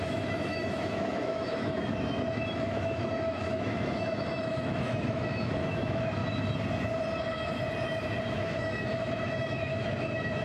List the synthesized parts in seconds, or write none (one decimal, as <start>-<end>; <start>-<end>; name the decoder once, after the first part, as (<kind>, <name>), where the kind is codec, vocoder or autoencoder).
0.0-6.2 (autoencoder, DAC-VAE); 8.3-10.4